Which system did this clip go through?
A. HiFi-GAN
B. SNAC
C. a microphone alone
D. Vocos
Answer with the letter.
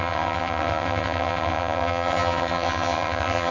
A